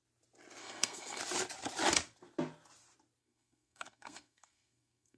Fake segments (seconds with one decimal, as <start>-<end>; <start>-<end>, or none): 0.6-1.2; 3.2-5.2